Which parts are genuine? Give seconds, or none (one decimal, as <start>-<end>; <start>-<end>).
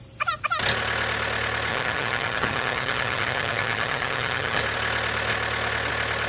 0.0-1.7; 4.6-6.3